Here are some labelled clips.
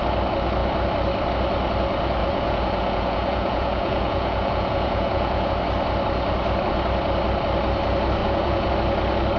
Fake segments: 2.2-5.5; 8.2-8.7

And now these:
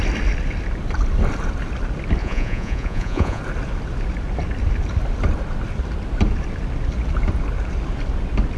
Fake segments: 2.2-3.4

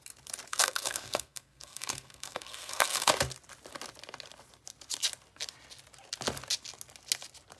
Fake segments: 0.5-3.1

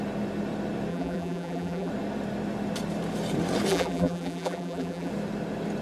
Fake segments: 0.9-1.9; 3.7-5.1

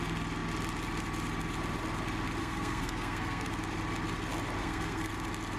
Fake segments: 2.4-3.5; 4.6-5.1